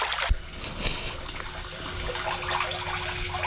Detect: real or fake real